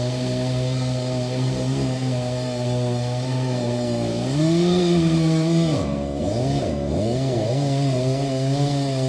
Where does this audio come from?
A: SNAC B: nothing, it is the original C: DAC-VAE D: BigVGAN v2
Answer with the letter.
A